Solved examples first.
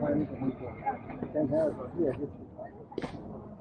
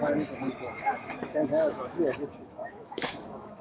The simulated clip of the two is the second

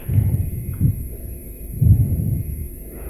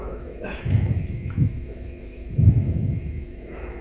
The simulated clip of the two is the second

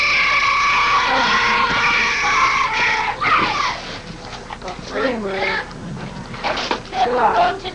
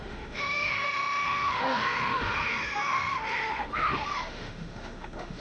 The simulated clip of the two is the second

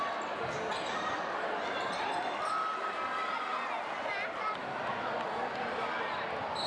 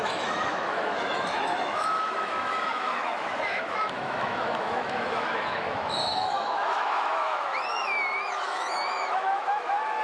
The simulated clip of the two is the second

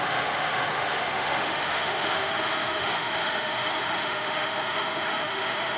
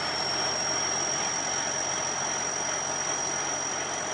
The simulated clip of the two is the first